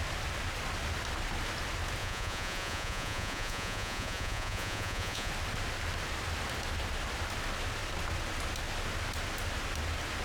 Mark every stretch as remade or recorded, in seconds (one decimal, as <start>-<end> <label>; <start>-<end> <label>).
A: 0.0-2.0 recorded; 2.0-5.3 remade; 5.3-10.2 recorded